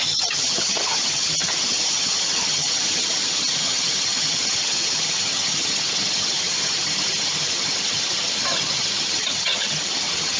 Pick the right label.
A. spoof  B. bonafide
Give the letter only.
A